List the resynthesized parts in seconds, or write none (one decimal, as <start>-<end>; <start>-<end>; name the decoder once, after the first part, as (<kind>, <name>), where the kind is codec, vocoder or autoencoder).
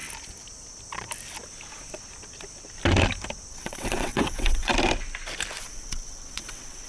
3.5-4.7 (vocoder, WaveNeXt); 5.6-6.9